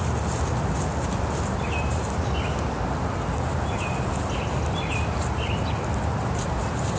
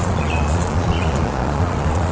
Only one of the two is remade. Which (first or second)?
second